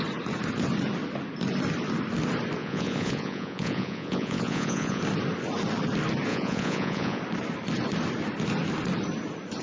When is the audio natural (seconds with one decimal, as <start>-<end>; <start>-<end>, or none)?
0.0-2.6; 5.0-6.3; 7.2-9.6